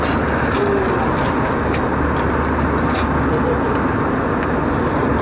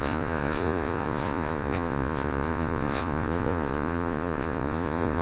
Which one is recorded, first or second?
first